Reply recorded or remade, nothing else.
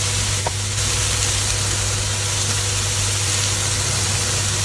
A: recorded